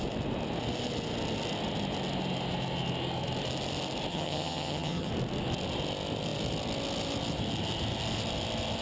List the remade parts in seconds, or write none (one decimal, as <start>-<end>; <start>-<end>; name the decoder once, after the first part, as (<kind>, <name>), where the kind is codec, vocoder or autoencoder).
4.1-5.1 (vocoder, HiFi-GAN)